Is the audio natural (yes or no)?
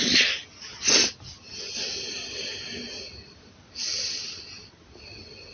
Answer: yes